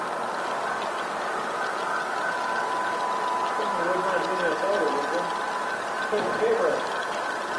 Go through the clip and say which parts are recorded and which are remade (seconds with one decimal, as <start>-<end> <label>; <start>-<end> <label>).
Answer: 0.0-3.7 remade; 3.7-6.2 recorded; 6.2-7.6 remade